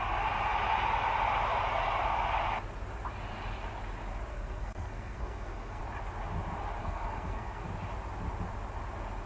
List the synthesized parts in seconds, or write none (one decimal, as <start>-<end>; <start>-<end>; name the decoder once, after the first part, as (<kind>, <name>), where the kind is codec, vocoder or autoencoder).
4.3-5.8 (codec, SNAC); 6.8-7.7